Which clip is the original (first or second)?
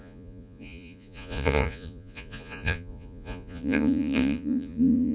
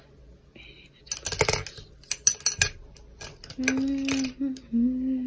second